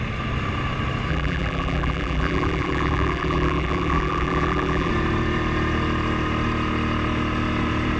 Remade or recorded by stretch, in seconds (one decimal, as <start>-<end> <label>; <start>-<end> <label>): 0.0-1.1 recorded; 1.1-4.9 remade; 4.9-8.0 recorded